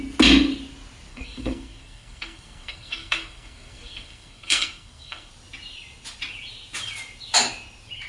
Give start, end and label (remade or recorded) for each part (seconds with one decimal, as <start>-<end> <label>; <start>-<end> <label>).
0.0-1.1 recorded; 1.1-5.3 remade; 5.3-8.1 recorded